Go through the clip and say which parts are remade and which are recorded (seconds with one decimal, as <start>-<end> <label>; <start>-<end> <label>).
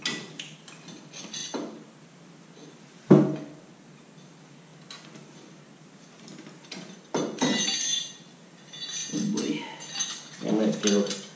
0.0-11.4 recorded